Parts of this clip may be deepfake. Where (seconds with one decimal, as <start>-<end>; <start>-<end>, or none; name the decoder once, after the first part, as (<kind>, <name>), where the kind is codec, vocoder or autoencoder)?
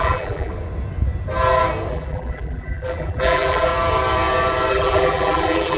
0.0-0.5 (vocoder, BigVGAN v2); 1.9-3.7; 4.7-5.8